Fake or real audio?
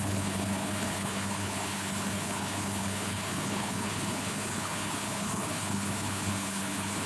fake